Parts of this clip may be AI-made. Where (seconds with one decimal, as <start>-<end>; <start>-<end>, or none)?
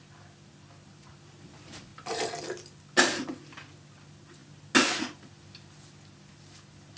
none